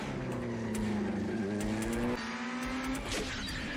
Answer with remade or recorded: recorded